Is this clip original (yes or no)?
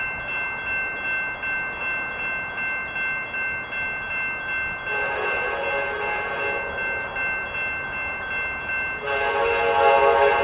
yes